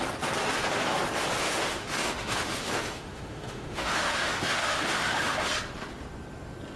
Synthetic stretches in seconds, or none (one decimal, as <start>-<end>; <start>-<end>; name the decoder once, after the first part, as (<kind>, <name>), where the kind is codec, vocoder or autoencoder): 1.4-5.5 (autoencoder, DAC-VAE)